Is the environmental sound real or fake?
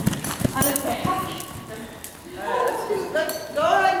real